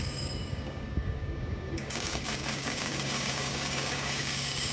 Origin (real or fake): fake